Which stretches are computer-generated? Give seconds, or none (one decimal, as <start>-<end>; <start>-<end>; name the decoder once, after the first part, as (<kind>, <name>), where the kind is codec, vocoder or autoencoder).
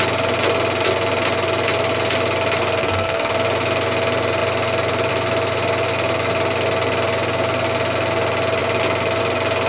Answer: 2.8-3.3 (codec, SNAC)